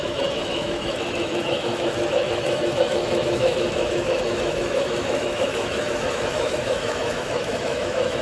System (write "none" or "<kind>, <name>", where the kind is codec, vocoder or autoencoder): autoencoder, DAC-VAE